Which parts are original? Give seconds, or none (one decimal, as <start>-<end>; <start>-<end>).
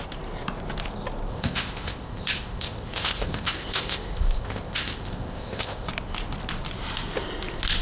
0.0-1.3; 5.9-7.8